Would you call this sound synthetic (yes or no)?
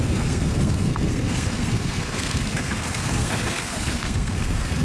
yes